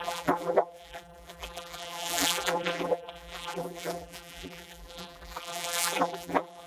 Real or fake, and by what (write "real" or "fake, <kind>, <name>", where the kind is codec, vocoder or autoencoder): fake, vocoder, BigVGAN v2